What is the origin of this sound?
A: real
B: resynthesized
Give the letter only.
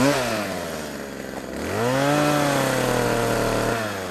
A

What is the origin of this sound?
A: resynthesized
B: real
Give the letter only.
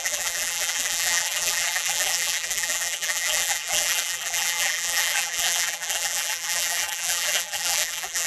A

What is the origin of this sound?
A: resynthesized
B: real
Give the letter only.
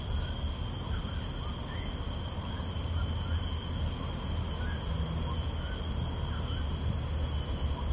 B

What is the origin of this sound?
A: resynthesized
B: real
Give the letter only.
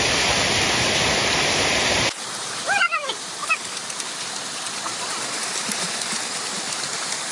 B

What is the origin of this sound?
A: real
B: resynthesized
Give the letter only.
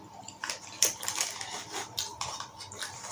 A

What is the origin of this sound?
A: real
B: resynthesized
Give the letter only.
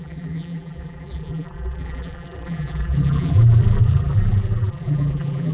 B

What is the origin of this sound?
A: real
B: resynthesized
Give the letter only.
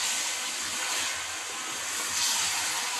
A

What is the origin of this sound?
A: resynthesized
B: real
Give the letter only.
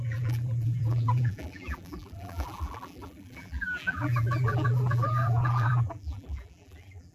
A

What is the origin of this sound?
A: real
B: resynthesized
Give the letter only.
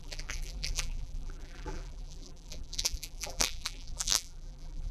B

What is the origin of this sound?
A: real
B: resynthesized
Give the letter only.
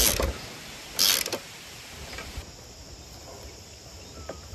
A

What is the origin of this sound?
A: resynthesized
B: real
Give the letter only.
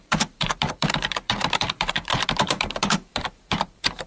A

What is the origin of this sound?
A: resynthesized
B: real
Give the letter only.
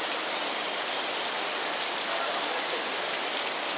A